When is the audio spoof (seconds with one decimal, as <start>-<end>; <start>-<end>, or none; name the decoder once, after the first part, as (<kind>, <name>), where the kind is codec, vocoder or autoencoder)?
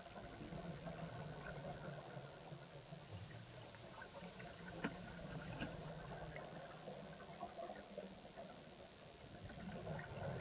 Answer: 3.1-5.9 (vocoder, BigVGAN v2)